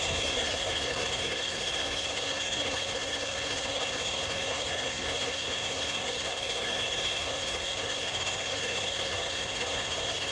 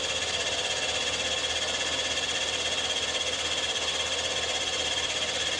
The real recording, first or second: second